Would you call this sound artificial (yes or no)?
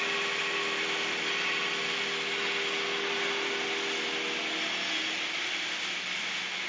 no